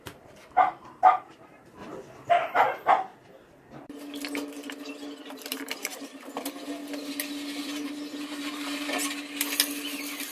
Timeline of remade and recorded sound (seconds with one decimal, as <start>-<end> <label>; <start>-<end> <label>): 0.0-1.8 remade; 1.8-2.3 recorded; 2.3-3.1 remade; 3.1-5.2 recorded; 5.2-6.8 remade; 6.8-7.6 recorded; 7.6-9.0 remade; 9.0-10.3 recorded